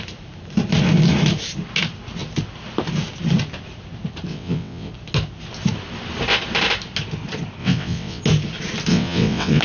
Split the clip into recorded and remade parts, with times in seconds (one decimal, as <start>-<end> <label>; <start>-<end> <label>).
0.0-4.3 recorded; 4.3-4.9 remade; 4.9-7.6 recorded; 7.6-8.2 remade; 8.2-8.9 recorded; 8.9-9.6 remade